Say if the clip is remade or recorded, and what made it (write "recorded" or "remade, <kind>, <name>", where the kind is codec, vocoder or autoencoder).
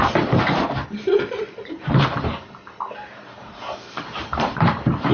remade, vocoder, BigVGAN v2